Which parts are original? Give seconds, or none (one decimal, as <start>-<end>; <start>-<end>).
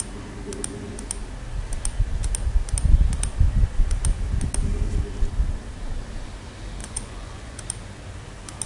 0.0-6.8; 7.6-8.7